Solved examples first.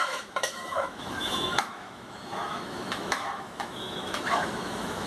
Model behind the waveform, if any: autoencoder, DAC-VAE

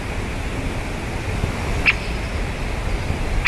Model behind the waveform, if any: none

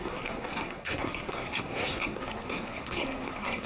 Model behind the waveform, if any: codec, SNAC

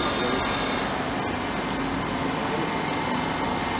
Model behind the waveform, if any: none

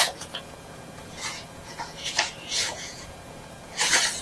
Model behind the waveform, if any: vocoder, Vocos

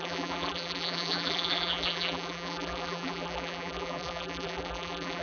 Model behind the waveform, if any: vocoder, BigVGAN v2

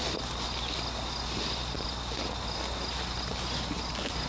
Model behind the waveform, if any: none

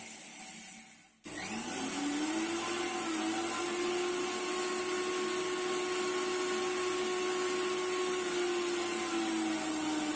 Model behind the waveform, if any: none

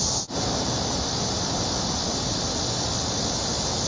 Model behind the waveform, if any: none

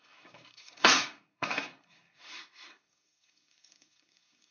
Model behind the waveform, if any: codec, SNAC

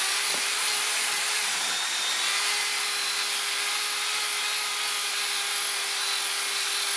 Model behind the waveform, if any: none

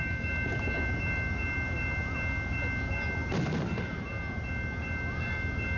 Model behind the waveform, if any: none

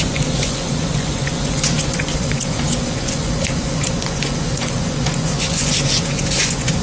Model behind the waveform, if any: vocoder, Vocos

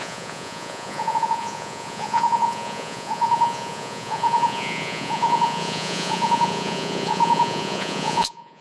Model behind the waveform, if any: vocoder, Vocos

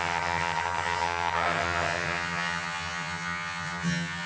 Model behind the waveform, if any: vocoder, HiFi-GAN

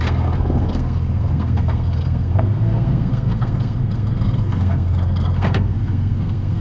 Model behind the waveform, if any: codec, SNAC